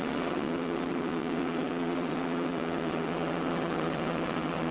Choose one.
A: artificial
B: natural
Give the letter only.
A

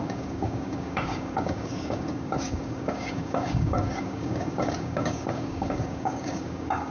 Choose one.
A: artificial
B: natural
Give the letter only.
A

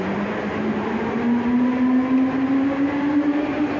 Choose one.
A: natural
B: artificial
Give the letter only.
A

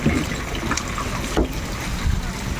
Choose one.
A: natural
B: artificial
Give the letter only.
A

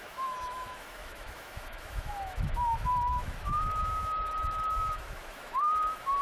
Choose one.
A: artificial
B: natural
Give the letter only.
A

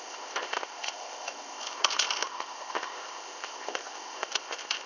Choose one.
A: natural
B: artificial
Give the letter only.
B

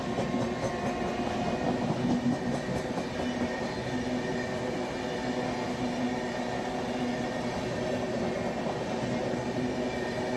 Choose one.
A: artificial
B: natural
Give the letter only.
B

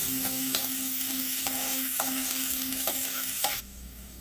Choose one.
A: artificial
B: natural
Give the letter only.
A